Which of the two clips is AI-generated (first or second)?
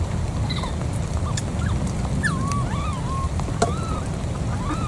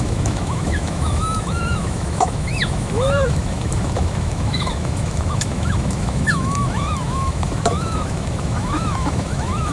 second